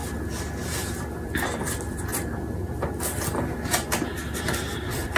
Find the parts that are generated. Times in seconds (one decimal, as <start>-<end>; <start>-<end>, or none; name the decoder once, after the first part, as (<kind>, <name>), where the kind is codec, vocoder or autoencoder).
0.6-2.1 (vocoder, BigVGAN v2); 4.4-5.2